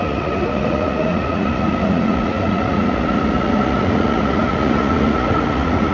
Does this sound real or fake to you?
fake